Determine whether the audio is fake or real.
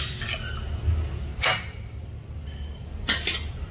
real